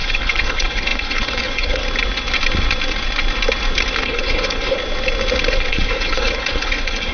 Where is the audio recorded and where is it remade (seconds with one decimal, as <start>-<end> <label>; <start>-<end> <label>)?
0.0-1.8 remade; 1.8-4.0 recorded; 4.0-4.8 remade; 4.8-5.5 recorded; 5.5-7.1 remade